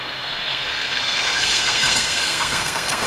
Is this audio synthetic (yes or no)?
yes